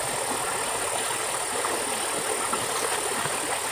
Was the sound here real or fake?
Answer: real